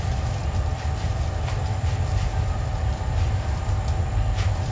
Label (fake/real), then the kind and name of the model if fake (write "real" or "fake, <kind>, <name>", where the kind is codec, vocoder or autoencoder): fake, vocoder, BigVGAN v2